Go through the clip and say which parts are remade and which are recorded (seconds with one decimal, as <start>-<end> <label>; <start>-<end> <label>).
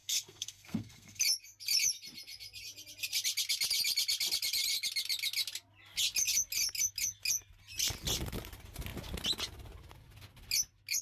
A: 0.0-1.2 remade; 1.2-11.0 recorded